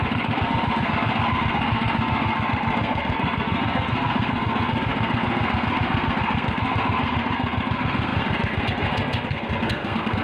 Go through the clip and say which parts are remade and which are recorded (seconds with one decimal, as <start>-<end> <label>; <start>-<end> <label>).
0.0-10.2 remade